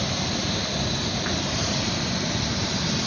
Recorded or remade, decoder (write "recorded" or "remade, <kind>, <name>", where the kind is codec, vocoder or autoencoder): recorded